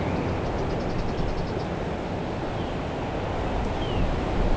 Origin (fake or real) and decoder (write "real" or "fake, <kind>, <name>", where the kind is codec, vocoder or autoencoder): real